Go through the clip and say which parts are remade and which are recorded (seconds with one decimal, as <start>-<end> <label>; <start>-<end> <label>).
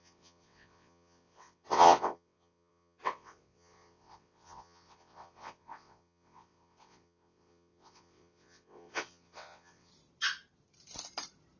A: 0.0-9.9 remade; 9.9-11.6 recorded